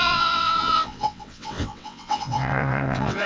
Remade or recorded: remade